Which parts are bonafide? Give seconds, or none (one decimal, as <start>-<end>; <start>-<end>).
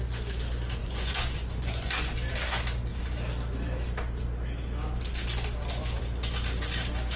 0.0-0.8; 2.1-7.2